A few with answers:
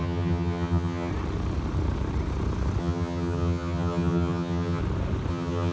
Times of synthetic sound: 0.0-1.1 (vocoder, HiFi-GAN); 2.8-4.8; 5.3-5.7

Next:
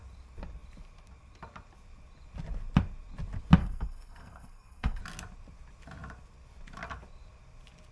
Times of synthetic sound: 3.6-5.0 (codec, SNAC)

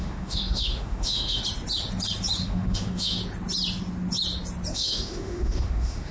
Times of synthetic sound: 0.0-1.4 (autoencoder, DAC-VAE); 2.4-3.2; 4.7-6.1

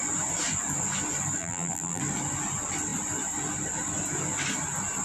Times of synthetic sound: 1.4-2.0 (vocoder, BigVGAN v2)